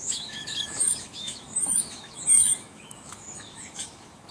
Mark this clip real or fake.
fake